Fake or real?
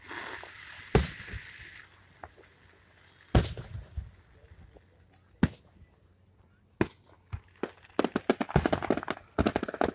real